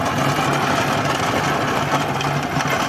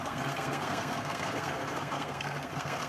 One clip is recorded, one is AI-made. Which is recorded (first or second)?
first